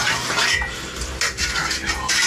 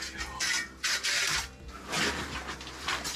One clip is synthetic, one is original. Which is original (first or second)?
second